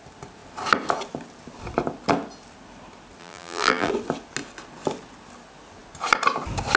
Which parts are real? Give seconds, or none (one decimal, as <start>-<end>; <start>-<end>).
0.0-3.2; 3.9-6.8